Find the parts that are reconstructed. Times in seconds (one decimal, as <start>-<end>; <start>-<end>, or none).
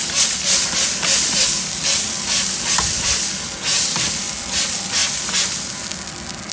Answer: none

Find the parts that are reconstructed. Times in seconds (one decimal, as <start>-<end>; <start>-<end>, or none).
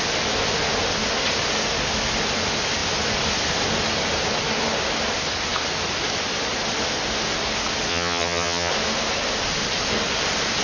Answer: 7.9-8.7